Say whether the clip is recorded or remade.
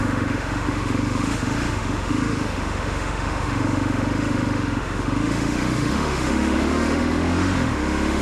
remade